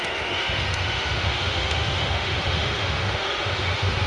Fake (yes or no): yes